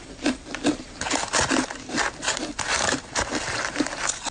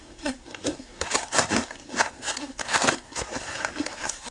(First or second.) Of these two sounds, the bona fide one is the first